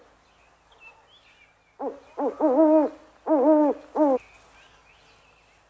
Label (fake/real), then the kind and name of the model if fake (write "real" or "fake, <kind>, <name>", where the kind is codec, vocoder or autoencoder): real